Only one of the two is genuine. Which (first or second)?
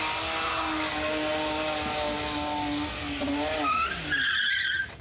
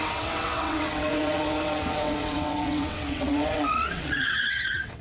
first